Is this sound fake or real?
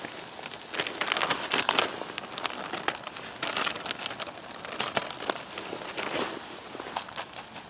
real